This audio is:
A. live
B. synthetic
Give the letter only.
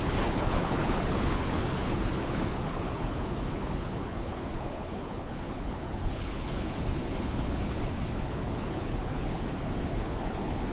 B